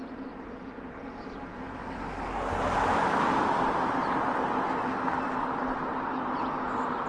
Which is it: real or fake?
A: real